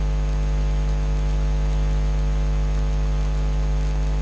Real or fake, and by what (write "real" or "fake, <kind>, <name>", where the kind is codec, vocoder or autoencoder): real